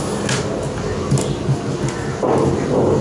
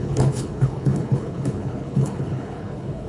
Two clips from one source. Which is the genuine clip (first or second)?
first